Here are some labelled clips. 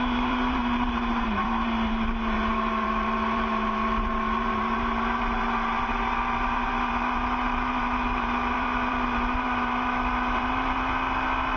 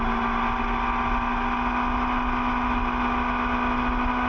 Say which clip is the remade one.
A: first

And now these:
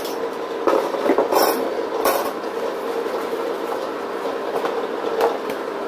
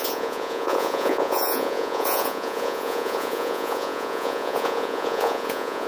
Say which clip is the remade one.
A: second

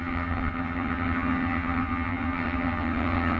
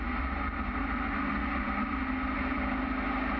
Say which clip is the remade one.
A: first